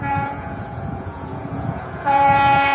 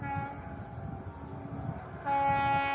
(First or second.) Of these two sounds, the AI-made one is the first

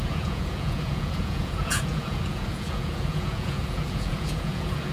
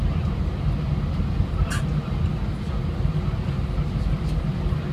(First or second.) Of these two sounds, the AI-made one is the first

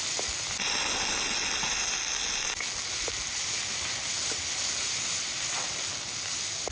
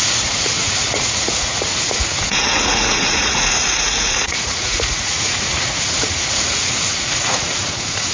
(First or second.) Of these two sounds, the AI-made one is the second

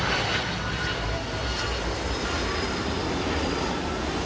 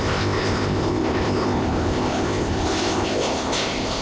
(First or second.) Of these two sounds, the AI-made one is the second